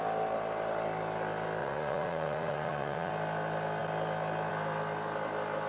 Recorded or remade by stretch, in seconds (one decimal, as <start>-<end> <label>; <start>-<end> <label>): 0.0-1.6 recorded; 1.6-3.1 remade; 3.1-5.7 recorded

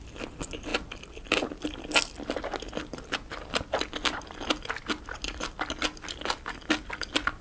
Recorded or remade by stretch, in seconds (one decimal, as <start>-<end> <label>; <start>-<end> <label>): 0.0-7.4 recorded

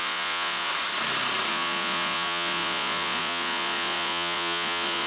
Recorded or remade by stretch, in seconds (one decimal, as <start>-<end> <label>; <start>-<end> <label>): 0.0-0.7 remade; 0.7-1.5 recorded; 1.5-5.1 remade